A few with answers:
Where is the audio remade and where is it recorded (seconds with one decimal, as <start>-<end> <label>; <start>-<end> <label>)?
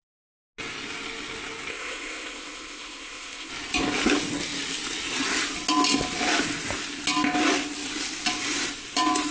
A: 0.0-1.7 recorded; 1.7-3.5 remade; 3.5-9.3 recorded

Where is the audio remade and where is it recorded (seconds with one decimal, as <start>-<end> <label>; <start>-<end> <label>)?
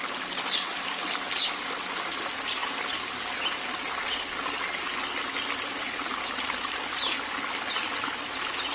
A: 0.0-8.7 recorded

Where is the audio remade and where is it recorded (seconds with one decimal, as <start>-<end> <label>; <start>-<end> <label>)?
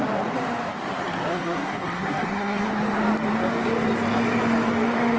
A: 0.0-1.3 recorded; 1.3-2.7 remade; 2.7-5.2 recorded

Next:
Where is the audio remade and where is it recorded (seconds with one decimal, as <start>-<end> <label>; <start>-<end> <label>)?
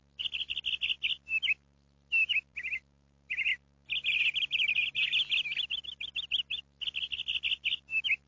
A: 0.0-8.3 recorded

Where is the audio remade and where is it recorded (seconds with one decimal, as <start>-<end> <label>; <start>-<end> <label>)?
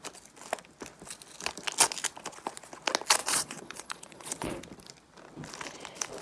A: 0.0-3.2 recorded; 3.2-4.6 remade; 4.6-6.2 recorded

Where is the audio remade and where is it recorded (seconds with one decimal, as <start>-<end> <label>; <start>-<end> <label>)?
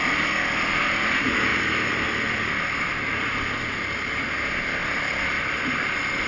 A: 0.0-1.5 recorded; 1.5-4.3 remade; 4.3-4.8 recorded; 4.8-6.3 remade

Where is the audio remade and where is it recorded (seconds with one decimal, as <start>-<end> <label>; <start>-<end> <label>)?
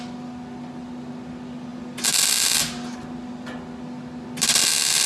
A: 0.0-5.1 recorded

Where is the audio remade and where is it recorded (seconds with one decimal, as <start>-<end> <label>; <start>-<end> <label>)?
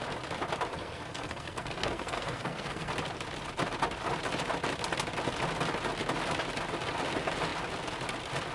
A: 0.0-0.7 recorded; 0.7-2.9 remade; 2.9-8.5 recorded